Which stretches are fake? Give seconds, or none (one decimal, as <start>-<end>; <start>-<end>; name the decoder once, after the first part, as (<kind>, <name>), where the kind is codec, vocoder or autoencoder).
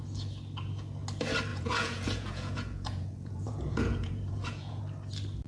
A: 1.5-4.8 (vocoder, Vocos)